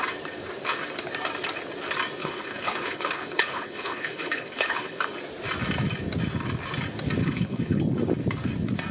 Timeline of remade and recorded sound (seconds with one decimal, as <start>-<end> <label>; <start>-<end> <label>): 0.0-2.2 recorded; 2.2-5.0 remade; 5.0-7.2 recorded; 7.2-7.8 remade; 7.8-8.9 recorded